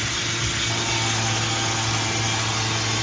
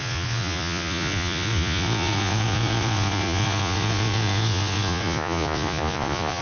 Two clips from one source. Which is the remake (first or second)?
second